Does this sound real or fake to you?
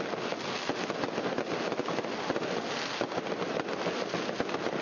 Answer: real